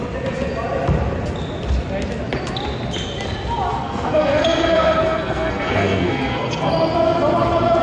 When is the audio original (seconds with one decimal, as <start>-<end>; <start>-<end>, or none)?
0.0-3.7; 6.7-7.8

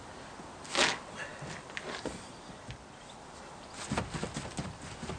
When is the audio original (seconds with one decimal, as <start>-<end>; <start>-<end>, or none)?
0.0-5.2

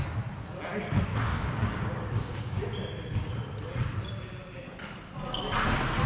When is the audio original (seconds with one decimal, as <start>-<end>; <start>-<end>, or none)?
0.0-1.1; 2.6-6.1

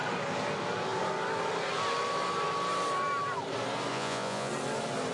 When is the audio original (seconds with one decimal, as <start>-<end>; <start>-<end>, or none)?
0.0-3.9; 4.5-5.1

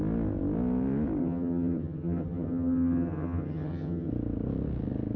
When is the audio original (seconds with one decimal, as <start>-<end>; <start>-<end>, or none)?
0.0-1.2; 4.1-5.2